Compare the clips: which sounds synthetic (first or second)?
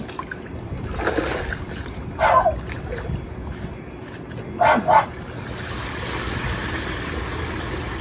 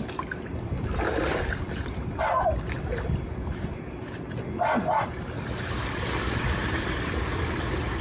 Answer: second